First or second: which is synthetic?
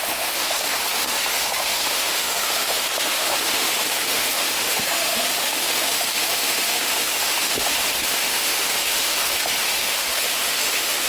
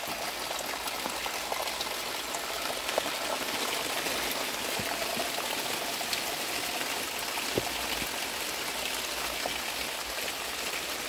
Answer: first